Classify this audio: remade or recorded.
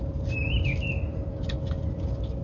recorded